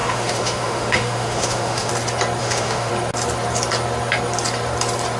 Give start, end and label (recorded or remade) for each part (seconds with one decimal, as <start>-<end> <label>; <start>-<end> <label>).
0.0-1.9 remade; 1.9-2.4 recorded; 2.4-2.9 remade; 2.9-5.2 recorded